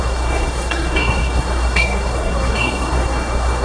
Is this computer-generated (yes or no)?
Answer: yes